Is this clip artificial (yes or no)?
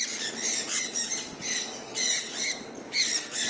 no